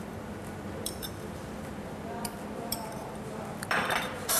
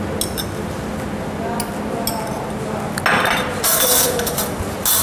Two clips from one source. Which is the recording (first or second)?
second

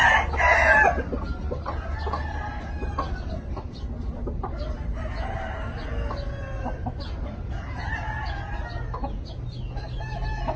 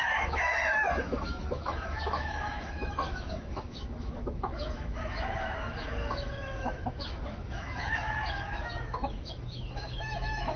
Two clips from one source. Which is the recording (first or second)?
first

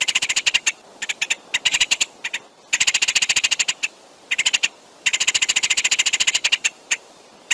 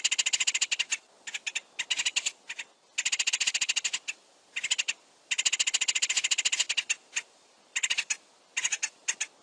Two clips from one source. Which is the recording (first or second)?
second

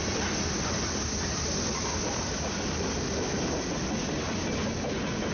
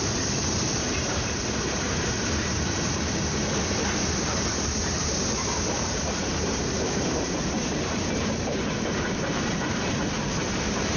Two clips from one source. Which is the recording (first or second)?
first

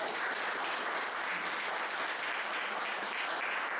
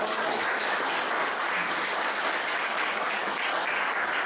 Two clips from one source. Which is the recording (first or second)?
first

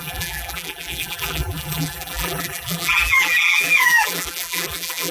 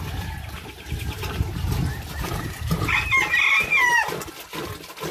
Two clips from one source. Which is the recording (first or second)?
second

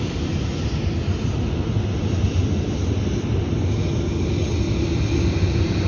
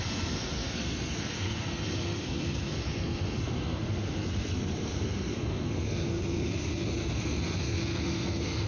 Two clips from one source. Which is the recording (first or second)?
first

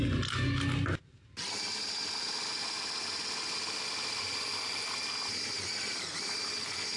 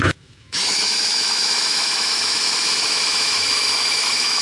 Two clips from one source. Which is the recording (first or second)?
first